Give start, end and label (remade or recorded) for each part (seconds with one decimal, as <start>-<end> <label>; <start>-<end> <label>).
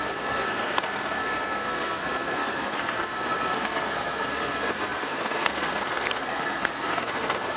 0.0-7.6 remade